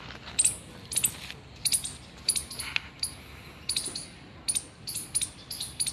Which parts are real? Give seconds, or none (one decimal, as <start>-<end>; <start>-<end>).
0.0-5.9